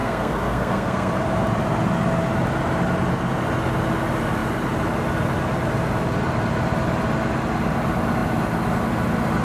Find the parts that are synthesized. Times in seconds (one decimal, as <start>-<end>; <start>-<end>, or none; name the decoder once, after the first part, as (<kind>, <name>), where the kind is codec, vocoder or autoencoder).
0.0-1.1 (codec, SNAC)

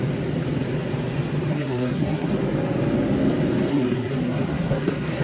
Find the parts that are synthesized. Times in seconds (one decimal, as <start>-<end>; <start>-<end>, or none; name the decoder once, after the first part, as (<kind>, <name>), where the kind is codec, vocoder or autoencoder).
1.5-2.3 (codec, SNAC); 3.7-5.2

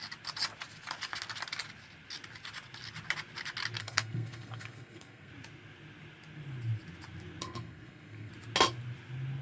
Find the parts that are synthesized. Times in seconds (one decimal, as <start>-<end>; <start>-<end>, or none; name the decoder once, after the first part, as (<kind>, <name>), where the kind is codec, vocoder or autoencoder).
3.8-5.3 (codec, SNAC); 7.4-8.3

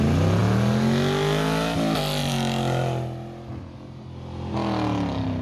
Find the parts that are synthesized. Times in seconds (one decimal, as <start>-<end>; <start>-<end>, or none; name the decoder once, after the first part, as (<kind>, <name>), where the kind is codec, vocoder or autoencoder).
none